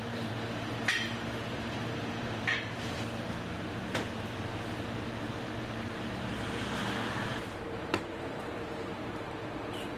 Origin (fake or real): fake